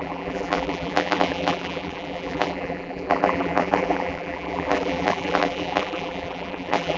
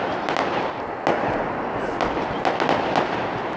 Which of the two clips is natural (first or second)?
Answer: second